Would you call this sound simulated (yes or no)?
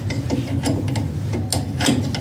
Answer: no